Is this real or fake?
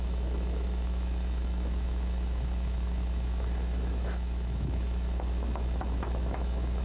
fake